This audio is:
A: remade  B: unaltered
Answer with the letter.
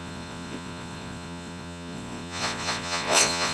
A